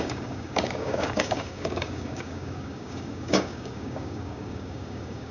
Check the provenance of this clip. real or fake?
fake